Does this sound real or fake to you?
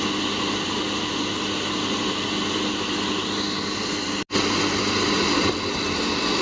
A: real